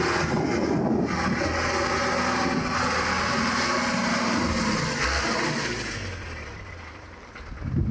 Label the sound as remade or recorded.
recorded